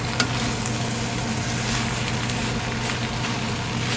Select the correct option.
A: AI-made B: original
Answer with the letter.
B